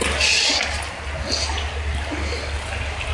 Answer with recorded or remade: recorded